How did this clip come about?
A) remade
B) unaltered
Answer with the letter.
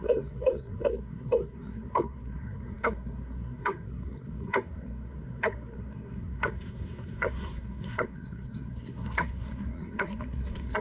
A